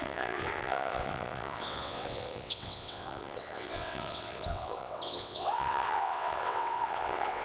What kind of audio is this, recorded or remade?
remade